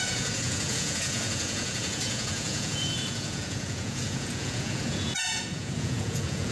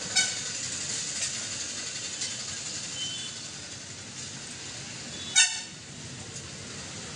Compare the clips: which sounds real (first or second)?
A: second